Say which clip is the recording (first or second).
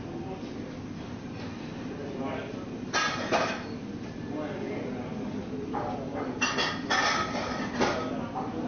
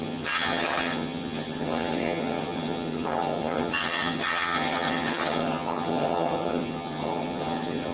first